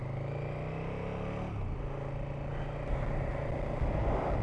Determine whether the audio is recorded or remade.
recorded